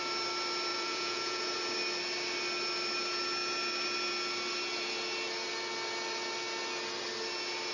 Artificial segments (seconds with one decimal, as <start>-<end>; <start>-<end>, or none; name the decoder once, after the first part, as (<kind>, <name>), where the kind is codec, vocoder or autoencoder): 0.7-1.5 (vocoder, Vocos)